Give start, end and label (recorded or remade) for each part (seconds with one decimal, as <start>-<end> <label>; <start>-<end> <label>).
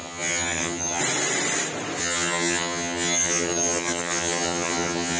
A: 0.0-1.0 remade; 1.0-2.0 recorded; 2.0-5.2 remade